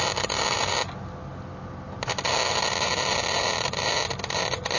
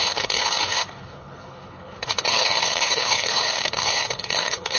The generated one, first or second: second